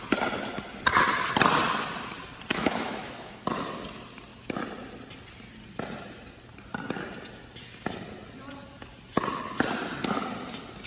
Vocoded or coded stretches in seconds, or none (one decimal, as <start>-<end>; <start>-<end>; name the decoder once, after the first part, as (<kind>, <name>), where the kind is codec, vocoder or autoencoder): 2.5-3.4 (autoencoder, DAC-VAE)